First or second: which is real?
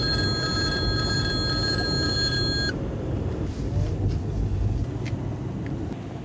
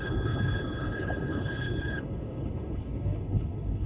first